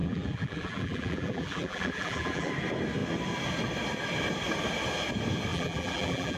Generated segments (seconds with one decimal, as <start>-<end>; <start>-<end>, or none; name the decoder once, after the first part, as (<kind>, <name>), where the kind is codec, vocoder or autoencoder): 0.0-2.5 (vocoder, BigVGAN v2); 5.5-6.4